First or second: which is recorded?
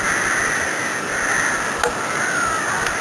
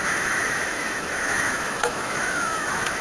first